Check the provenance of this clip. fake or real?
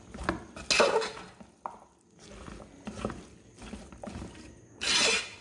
real